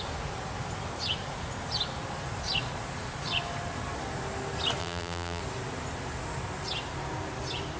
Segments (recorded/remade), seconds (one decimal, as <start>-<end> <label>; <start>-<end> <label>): 0.0-4.8 recorded; 4.8-5.4 remade; 5.4-7.8 recorded